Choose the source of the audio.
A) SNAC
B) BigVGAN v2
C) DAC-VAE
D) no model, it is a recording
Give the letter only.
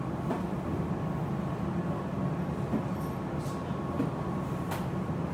D